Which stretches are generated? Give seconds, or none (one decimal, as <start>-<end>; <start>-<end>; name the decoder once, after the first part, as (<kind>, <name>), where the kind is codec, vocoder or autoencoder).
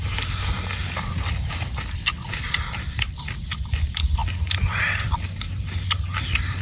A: none